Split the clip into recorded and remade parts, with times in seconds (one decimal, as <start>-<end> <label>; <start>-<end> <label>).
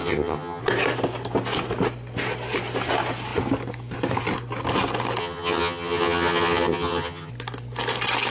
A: 0.0-0.6 remade; 0.6-5.2 recorded; 5.2-7.3 remade; 7.3-8.3 recorded